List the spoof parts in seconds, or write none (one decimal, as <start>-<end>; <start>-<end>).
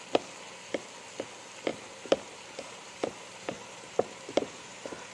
1.7-5.1